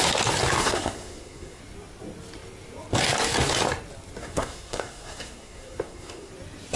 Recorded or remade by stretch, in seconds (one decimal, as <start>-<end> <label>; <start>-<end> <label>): 0.0-0.6 recorded; 0.6-1.6 remade; 1.6-4.2 recorded; 4.2-6.3 remade; 6.3-6.8 recorded